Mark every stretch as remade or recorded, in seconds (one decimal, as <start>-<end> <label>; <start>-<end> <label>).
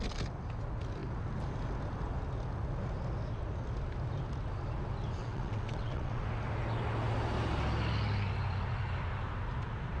0.0-5.2 recorded; 5.2-6.2 remade; 6.2-10.0 recorded